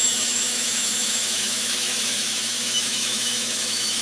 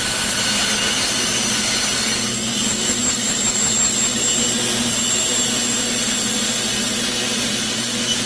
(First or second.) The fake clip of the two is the first